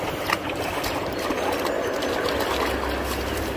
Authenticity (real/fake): real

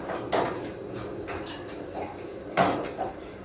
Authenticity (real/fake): fake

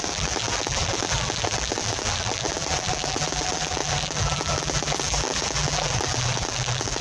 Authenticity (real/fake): fake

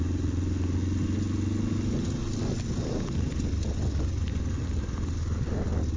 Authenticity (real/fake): real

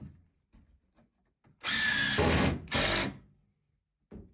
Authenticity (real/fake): real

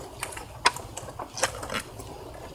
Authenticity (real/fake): real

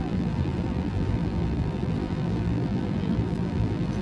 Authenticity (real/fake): fake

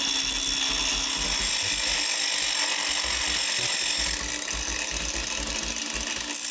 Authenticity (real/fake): real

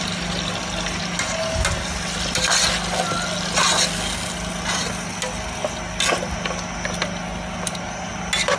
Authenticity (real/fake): real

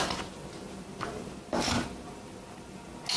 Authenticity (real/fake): real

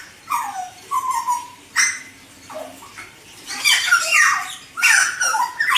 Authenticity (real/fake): fake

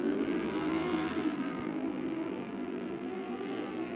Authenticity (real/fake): fake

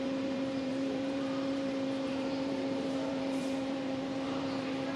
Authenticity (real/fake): fake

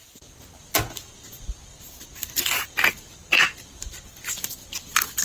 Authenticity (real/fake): real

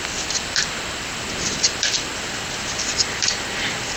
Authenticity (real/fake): fake